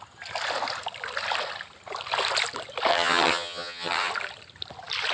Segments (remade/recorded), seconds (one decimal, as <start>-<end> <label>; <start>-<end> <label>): 0.0-2.9 recorded; 2.9-4.1 remade; 4.1-5.1 recorded